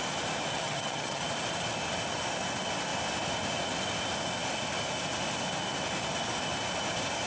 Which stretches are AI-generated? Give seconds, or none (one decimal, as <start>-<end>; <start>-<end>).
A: 0.5-1.2